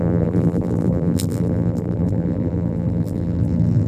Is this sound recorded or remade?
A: remade